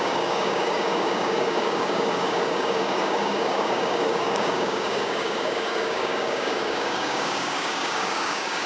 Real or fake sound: fake